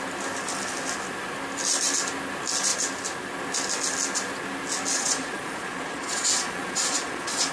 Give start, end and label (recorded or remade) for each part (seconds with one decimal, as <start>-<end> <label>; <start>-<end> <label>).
0.0-4.9 recorded; 4.9-7.5 remade